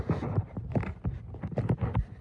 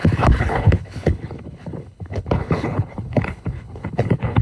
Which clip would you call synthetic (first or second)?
second